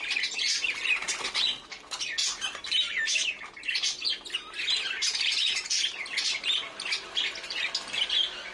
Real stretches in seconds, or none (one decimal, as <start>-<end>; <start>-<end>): 0.0-2.2; 2.8-8.5